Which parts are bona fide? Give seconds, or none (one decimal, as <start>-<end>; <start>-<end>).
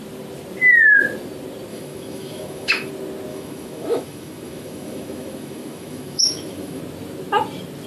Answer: 0.0-1.7; 2.9-3.3; 6.8-7.9